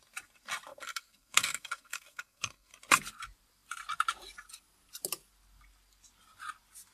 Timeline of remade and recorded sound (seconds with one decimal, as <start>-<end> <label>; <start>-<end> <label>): 0.0-0.7 recorded; 0.7-2.7 remade; 2.7-6.9 recorded